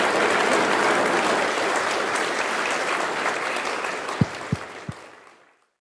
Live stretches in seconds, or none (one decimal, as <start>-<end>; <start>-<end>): 0.0-5.9